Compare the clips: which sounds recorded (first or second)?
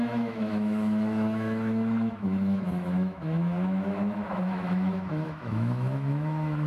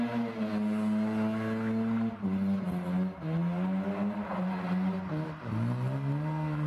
second